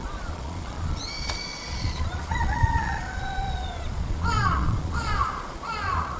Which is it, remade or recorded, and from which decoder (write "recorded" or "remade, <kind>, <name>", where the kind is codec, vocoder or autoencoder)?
remade, vocoder, Vocos